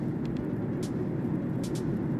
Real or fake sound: real